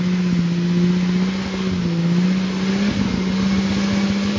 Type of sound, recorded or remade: recorded